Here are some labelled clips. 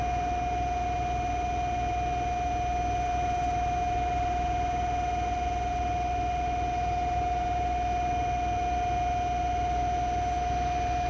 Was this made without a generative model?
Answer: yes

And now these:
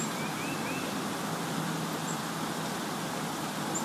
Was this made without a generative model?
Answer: yes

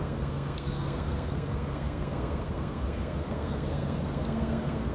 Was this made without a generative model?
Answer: no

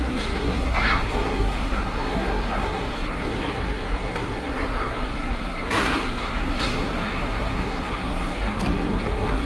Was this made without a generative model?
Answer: no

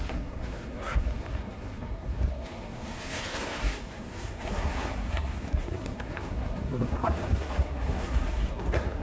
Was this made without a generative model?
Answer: no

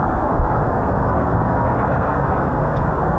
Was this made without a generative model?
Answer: no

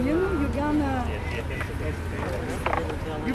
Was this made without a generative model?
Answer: yes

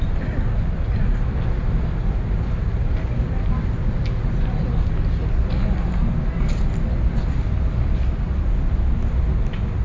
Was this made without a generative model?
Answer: yes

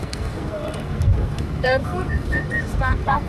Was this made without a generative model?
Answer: no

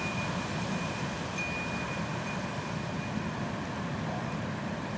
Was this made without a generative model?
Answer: yes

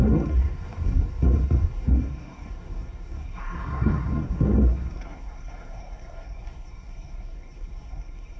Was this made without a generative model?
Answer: no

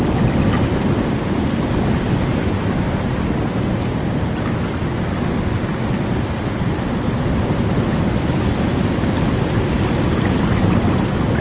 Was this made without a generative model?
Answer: yes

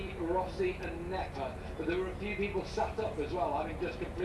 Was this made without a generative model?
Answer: yes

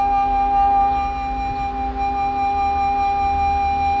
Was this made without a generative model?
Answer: yes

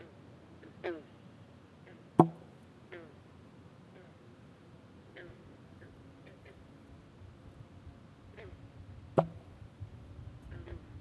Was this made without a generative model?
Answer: yes